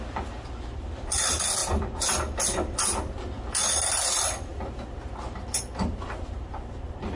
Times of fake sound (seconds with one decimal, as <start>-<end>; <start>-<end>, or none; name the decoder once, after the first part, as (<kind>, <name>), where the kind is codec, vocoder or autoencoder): 0.0-1.6 (vocoder, BigVGAN v2); 3.6-7.2